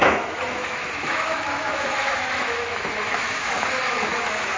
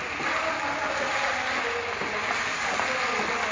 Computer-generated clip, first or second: first